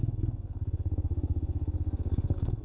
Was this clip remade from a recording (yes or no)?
yes